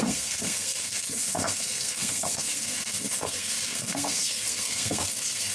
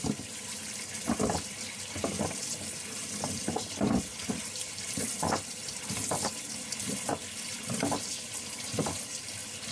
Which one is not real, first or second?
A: first